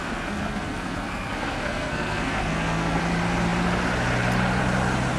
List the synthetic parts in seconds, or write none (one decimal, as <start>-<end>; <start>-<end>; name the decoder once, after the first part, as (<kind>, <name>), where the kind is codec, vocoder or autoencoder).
0.0-3.0 (codec, SNAC)